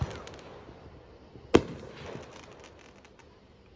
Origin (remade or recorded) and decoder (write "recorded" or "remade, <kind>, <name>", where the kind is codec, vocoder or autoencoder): recorded